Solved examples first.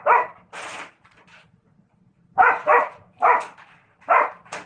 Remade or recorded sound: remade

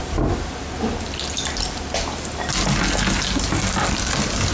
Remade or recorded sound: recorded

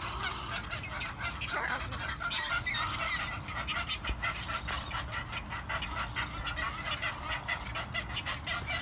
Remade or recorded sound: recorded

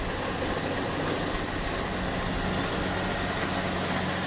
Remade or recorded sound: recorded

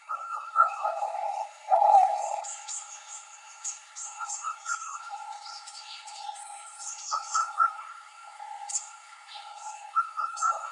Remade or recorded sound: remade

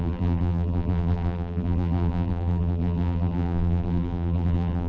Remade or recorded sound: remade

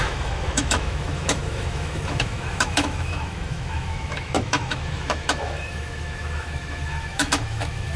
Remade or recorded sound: remade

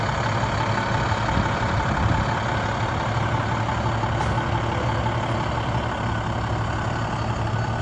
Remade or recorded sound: recorded